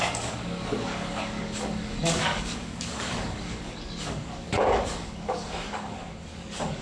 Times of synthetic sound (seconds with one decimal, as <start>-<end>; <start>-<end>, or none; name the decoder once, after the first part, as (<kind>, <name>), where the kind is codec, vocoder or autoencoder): 0.0-6.8 (codec, DAC)